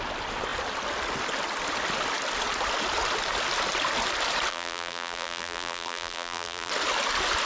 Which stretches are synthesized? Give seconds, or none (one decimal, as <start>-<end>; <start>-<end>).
4.5-6.7